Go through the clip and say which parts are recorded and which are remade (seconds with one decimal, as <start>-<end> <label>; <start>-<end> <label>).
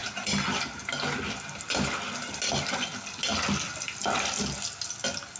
0.0-5.4 recorded